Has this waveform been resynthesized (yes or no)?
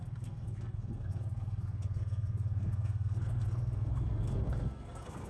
yes